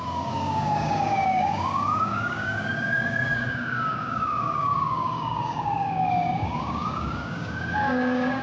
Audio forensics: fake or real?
fake